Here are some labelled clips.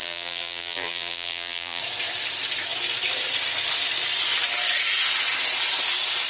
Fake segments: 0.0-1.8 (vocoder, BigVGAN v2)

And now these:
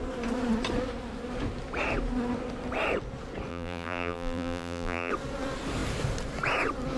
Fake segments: 3.5-5.1 (vocoder, BigVGAN v2)

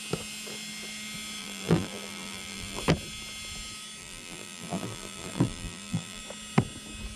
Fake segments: 1.4-2.8 (vocoder, BigVGAN v2); 4.0-6.2

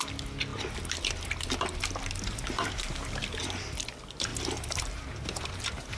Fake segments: 4.3-5.6 (vocoder, BigVGAN v2)

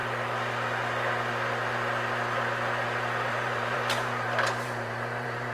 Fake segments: 3.3-5.5 (vocoder, BigVGAN v2)

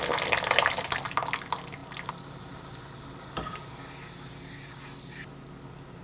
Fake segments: none

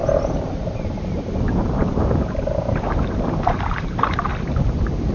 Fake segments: 0.0-4.3 (vocoder, BigVGAN v2)